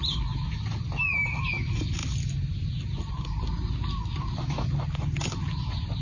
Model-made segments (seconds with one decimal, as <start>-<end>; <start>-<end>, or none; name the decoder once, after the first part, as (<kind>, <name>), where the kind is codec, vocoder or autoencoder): none